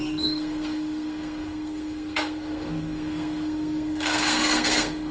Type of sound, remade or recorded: remade